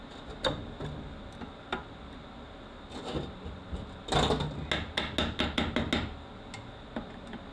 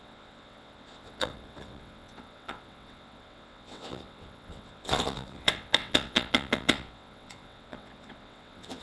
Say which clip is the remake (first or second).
second